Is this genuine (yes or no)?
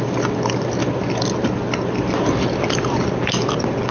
yes